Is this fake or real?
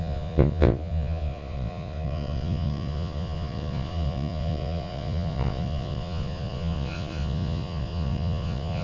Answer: fake